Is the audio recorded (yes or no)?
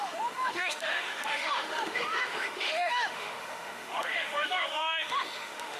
no